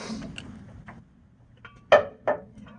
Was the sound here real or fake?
real